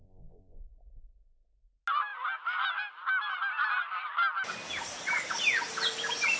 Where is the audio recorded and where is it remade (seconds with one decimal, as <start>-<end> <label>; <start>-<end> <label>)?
0.0-0.6 remade; 0.6-6.4 recorded